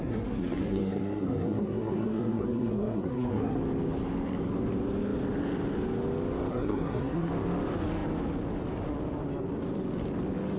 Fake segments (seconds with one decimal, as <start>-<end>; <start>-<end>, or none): 0.0-3.6; 6.5-7.3